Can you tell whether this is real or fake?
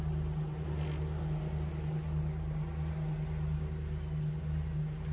real